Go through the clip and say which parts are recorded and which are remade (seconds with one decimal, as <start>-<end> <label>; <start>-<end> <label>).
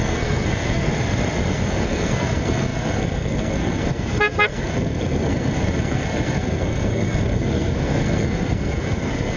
0.0-0.9 remade; 0.9-1.5 recorded; 1.5-9.4 remade